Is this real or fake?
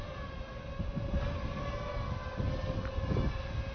real